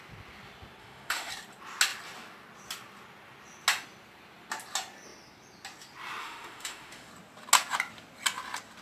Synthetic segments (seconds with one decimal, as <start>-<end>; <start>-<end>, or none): 0.8-1.3; 6.2-7.1